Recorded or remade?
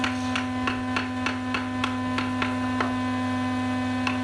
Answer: recorded